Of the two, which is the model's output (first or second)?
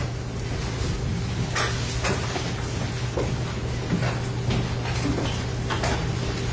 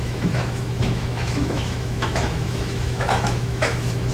second